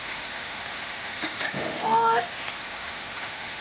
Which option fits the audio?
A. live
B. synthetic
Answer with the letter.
B